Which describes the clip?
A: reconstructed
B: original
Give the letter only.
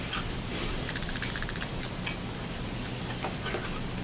A